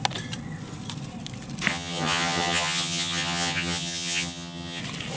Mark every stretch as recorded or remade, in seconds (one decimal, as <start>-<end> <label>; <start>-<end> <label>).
0.0-1.7 recorded; 1.7-4.8 remade; 4.8-5.2 recorded